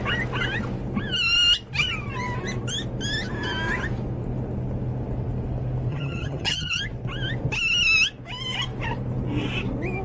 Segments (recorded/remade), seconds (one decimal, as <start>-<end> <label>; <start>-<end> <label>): 0.0-5.9 recorded; 5.9-6.8 remade; 6.8-10.0 recorded

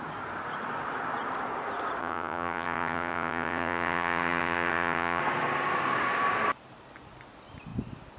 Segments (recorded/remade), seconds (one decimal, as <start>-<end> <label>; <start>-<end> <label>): 0.0-2.0 recorded; 2.0-5.2 remade; 5.2-8.2 recorded